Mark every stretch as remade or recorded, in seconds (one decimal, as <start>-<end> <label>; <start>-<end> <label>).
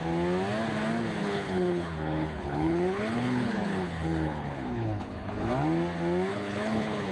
0.0-1.2 recorded; 1.2-5.5 remade; 5.5-6.3 recorded; 6.3-7.1 remade